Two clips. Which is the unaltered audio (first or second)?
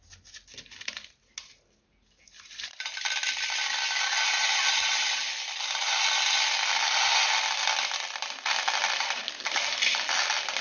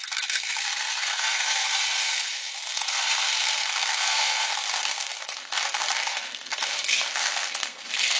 first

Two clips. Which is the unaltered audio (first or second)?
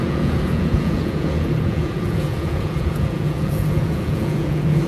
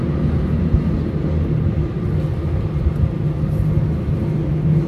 second